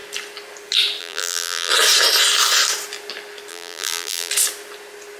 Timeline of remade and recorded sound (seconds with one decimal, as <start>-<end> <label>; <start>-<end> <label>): 0.0-1.0 recorded; 1.0-1.7 remade; 1.7-3.5 recorded; 3.5-4.3 remade; 4.3-5.2 recorded